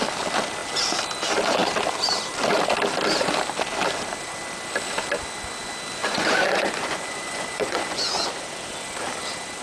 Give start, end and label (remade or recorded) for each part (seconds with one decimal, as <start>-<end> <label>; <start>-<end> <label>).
0.0-6.0 recorded; 6.0-8.4 remade; 8.4-9.6 recorded